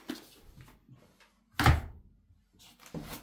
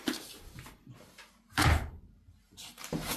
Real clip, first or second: first